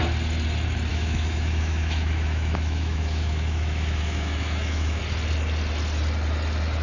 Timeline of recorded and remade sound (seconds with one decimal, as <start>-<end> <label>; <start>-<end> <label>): 0.0-0.9 recorded; 0.9-5.0 remade; 5.0-6.8 recorded